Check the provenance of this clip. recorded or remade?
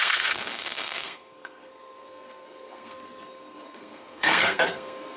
remade